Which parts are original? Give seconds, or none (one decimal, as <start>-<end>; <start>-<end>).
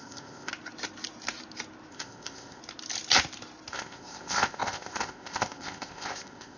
0.5-1.9; 2.6-3.7